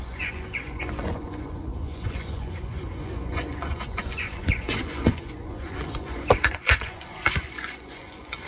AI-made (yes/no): yes